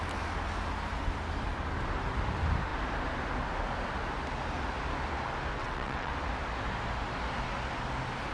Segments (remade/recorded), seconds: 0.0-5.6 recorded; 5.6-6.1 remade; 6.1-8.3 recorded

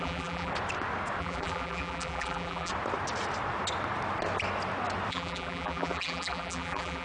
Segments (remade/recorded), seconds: 0.0-0.5 remade; 0.5-1.2 recorded; 1.2-2.7 remade; 2.7-5.1 recorded; 5.1-7.0 remade

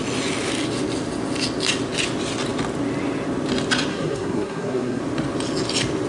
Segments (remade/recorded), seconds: 0.0-3.9 recorded; 3.9-5.0 remade; 5.0-6.1 recorded

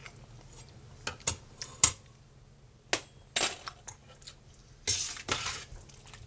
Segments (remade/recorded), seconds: 0.0-6.3 recorded

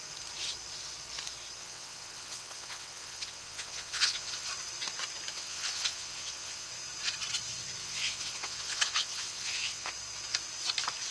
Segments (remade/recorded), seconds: 0.0-1.6 recorded; 1.6-4.5 remade; 4.5-5.3 recorded; 5.3-6.7 remade; 6.7-7.8 recorded; 7.8-9.9 remade; 9.9-11.1 recorded